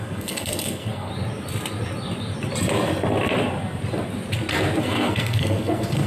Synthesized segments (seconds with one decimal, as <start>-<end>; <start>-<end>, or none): 0.0-1.1; 4.8-6.1